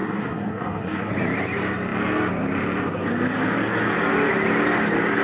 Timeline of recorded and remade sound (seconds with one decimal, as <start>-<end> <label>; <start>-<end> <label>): 0.0-1.1 remade; 1.1-5.2 recorded